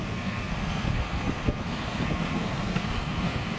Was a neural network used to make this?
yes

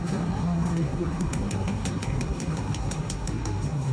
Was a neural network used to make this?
yes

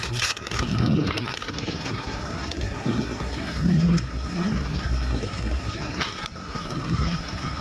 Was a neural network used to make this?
yes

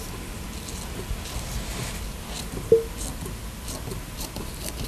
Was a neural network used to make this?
no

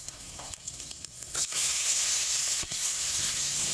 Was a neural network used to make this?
yes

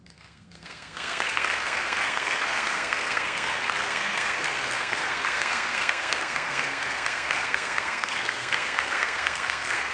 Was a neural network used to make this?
yes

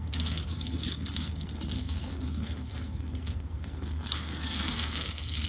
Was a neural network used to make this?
yes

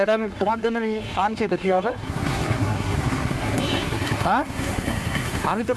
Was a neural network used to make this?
yes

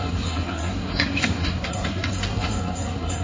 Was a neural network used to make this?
yes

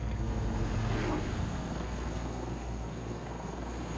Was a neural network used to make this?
yes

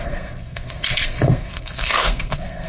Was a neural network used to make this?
yes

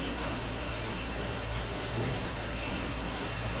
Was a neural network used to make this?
yes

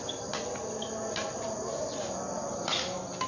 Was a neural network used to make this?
no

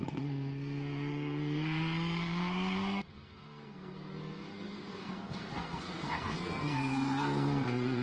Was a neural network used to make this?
yes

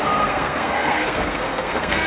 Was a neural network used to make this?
yes